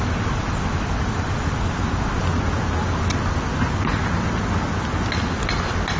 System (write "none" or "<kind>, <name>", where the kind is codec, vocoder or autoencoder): none